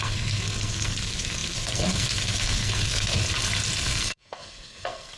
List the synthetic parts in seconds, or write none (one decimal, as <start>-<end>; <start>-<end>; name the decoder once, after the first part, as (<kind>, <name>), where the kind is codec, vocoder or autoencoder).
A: 0.0-3.2 (codec, SNAC); 3.8-5.2